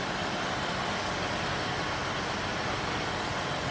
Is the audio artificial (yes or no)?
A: no